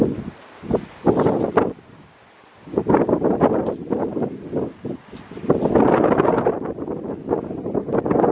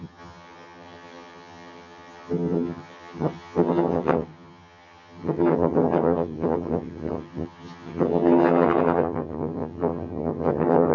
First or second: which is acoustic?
first